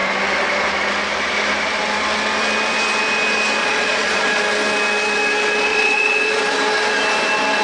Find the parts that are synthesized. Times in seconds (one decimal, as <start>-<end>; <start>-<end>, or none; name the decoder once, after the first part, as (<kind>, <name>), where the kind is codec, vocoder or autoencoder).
3.6-4.4 (vocoder, Vocos); 5.7-6.4